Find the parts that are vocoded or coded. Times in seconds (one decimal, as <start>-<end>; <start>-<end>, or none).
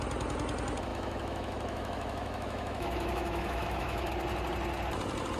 0.9-4.1